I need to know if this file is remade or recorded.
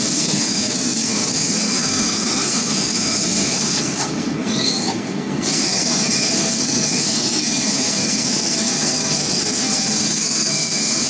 remade